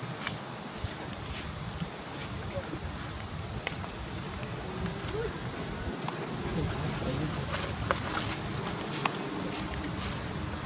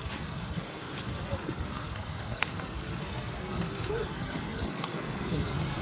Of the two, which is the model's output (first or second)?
second